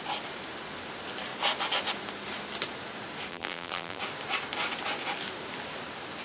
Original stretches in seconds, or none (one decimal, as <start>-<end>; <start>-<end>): 0.0-3.3; 4.0-6.2